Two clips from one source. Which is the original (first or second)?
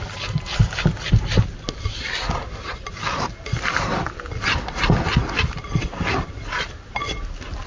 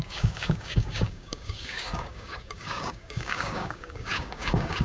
first